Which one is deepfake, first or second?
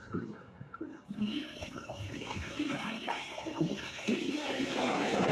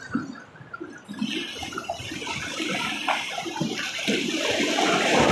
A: first